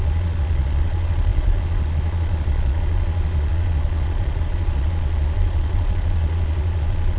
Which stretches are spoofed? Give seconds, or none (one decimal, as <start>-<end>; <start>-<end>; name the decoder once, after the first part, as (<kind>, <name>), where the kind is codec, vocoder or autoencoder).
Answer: 0.0-7.2 (vocoder, Vocos)